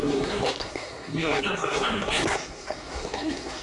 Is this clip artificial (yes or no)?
yes